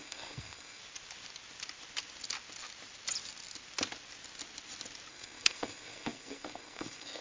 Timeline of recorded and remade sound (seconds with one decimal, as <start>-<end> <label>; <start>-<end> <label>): 0.0-0.8 remade; 0.8-5.1 recorded; 5.1-7.2 remade